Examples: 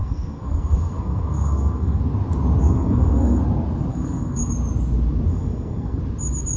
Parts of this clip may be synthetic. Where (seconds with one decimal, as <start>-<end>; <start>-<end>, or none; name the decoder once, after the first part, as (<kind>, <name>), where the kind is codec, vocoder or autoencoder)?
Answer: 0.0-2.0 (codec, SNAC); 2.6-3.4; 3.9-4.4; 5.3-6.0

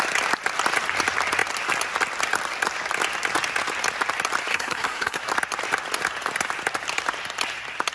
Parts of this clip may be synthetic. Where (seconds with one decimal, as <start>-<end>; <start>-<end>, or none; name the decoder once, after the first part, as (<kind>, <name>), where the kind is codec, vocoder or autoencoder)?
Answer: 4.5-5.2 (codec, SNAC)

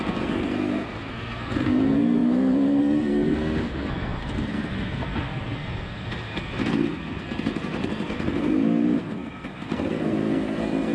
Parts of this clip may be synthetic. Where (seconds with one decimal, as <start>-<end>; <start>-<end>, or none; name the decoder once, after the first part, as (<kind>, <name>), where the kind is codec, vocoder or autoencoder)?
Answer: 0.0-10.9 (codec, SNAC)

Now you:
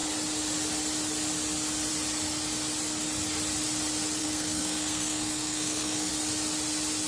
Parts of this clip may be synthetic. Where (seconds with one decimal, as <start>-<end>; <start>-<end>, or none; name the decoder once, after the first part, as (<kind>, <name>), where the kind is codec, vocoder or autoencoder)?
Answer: 4.2-6.1 (codec, SNAC)

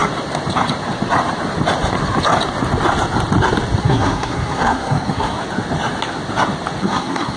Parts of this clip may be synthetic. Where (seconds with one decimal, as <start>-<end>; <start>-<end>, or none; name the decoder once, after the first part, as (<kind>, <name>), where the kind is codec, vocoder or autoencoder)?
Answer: 3.8-5.4 (codec, SNAC); 6.8-7.4

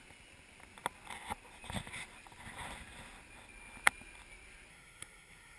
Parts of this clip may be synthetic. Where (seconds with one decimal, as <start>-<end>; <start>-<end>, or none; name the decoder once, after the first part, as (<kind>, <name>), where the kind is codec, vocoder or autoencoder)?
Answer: 4.7-5.6 (codec, SNAC)

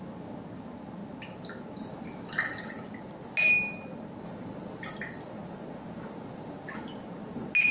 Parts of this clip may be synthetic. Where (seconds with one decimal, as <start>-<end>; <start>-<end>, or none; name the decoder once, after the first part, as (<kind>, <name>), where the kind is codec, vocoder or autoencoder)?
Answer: none